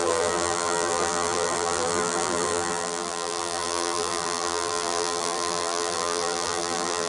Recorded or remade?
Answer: remade